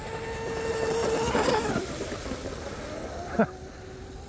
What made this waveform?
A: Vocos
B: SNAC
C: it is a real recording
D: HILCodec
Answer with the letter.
C